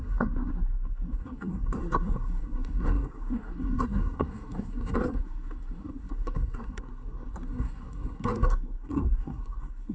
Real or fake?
fake